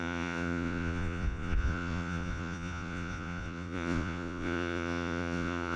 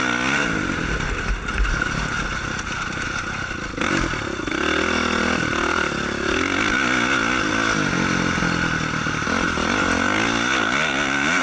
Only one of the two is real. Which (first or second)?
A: second